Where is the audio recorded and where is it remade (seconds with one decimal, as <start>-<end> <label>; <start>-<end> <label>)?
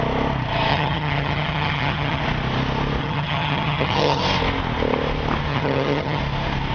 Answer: 0.0-0.7 recorded; 0.7-2.2 remade; 2.2-3.0 recorded; 3.0-4.2 remade; 4.2-5.5 recorded; 5.5-6.2 remade; 6.2-6.7 recorded